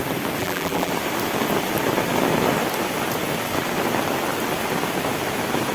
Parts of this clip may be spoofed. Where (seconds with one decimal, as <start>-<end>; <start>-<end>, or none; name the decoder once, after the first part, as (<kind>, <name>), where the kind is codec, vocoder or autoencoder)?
0.4-0.9 (vocoder, BigVGAN v2)